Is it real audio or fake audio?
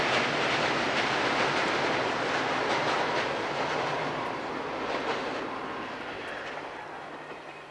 real